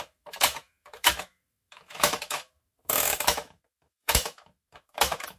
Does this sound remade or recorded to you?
remade